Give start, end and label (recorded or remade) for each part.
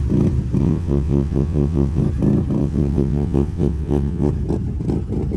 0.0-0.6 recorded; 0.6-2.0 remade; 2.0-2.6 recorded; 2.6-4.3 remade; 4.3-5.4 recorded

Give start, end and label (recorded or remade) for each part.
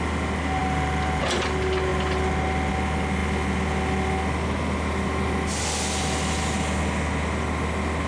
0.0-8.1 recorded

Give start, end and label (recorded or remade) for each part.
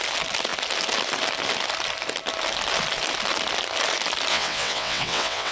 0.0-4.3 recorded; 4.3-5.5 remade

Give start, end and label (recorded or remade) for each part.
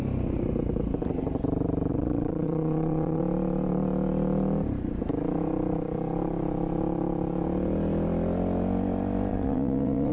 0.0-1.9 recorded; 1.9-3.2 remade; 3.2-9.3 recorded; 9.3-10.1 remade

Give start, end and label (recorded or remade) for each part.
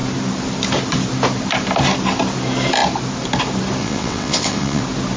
0.0-3.8 recorded; 3.8-4.8 remade; 4.8-5.2 recorded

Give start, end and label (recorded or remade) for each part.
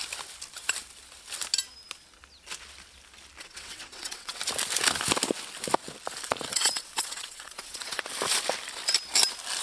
0.0-3.4 recorded; 3.4-4.4 remade; 4.4-6.5 recorded; 6.5-8.0 remade; 8.0-9.6 recorded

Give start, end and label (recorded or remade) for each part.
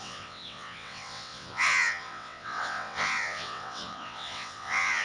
0.0-5.0 remade